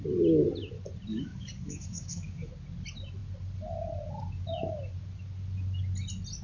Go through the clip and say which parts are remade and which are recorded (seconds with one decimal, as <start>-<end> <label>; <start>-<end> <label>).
0.0-1.1 recorded; 1.1-2.5 remade; 2.5-6.4 recorded